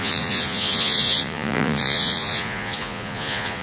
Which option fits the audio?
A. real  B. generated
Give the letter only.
B